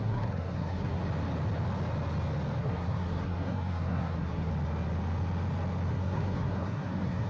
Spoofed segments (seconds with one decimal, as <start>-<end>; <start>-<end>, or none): 0.0-1.0; 2.6-4.5; 5.9-7.3